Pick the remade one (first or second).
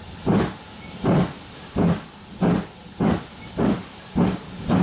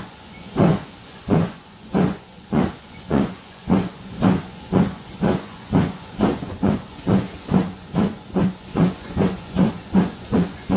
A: second